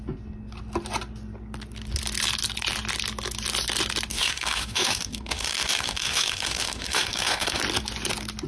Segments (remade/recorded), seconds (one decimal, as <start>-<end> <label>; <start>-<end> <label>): 0.0-4.1 recorded; 4.1-7.6 remade; 7.6-8.5 recorded